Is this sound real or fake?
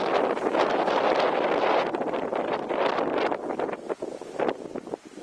real